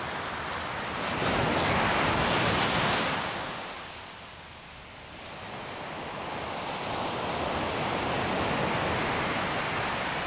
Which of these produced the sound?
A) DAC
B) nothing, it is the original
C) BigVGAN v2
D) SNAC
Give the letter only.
B